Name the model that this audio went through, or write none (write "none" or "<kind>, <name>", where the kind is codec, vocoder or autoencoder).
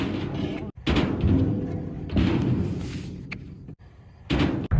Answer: none